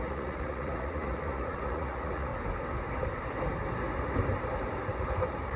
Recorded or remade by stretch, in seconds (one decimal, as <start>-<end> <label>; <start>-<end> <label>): 0.0-2.3 remade; 2.3-5.6 recorded